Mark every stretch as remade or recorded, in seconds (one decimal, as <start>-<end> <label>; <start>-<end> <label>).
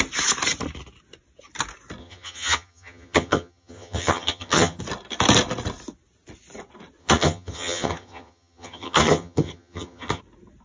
0.0-2.0 recorded; 2.0-4.8 remade; 4.8-7.0 recorded; 7.0-10.2 remade; 10.2-10.6 recorded